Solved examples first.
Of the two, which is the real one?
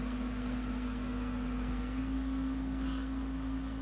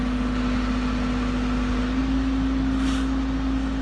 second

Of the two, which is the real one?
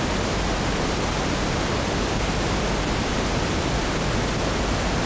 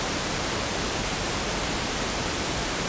first